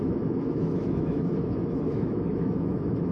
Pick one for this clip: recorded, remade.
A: remade